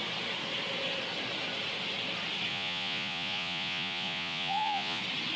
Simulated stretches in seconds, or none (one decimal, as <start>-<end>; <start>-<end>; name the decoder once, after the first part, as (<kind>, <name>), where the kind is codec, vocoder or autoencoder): 2.5-5.0 (vocoder, Vocos)